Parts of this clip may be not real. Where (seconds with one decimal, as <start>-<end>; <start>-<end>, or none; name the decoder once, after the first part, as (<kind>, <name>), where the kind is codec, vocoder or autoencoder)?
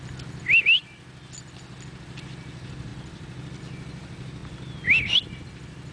none